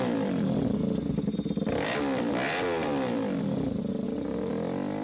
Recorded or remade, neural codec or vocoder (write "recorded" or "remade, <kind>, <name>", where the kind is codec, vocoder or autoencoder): recorded